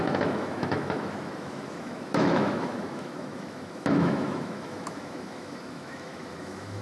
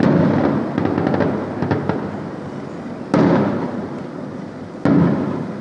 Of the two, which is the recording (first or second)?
second